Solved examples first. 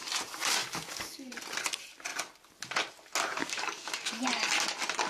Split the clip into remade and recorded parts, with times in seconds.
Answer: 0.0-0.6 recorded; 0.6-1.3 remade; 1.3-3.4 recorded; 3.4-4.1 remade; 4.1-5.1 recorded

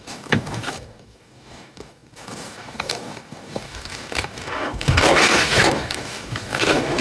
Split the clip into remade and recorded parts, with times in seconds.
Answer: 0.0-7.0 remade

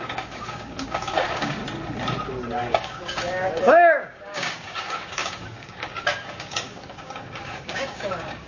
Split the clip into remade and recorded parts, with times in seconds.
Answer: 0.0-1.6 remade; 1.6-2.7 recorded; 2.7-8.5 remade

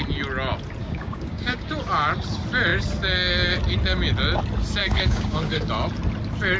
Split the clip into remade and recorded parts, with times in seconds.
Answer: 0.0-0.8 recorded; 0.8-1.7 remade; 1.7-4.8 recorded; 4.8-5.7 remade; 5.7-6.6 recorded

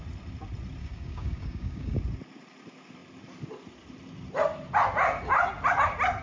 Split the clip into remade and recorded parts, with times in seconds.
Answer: 0.0-0.8 recorded; 0.8-2.0 remade; 2.0-6.2 recorded

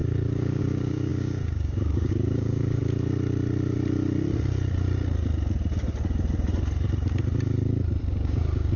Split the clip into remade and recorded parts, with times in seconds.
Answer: 0.0-2.8 remade; 2.8-8.0 recorded; 8.0-8.8 remade

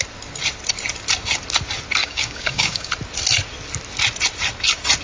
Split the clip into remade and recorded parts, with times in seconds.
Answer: 0.0-2.0 recorded; 2.0-2.9 remade; 2.9-5.0 recorded